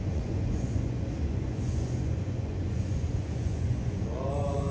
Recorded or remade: remade